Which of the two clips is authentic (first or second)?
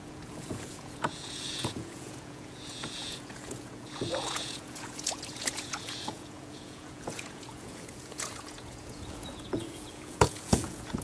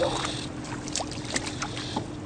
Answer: second